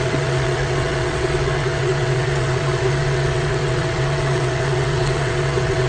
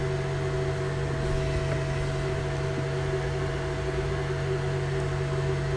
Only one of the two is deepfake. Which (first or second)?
first